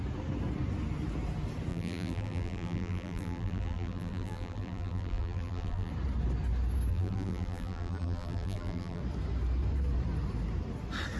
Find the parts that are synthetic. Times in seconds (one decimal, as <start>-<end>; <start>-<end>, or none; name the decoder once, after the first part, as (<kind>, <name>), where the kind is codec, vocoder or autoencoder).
1.7-5.9 (vocoder, BigVGAN v2); 6.9-9.0